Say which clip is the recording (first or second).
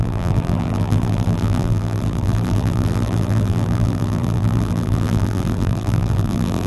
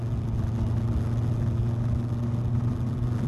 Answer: second